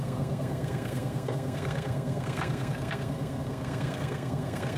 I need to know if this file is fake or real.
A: fake